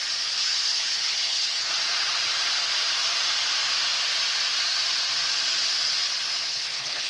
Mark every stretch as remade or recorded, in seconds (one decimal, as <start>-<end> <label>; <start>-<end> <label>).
0.0-0.4 recorded; 0.4-1.7 remade; 1.7-6.4 recorded; 6.4-7.1 remade